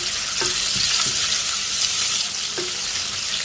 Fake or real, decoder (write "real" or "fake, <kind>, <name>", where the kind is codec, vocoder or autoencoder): real